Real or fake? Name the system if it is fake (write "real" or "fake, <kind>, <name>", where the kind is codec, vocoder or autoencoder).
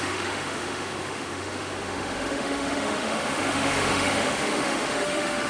fake, autoencoder, DAC-VAE